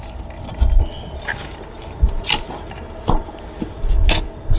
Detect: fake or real real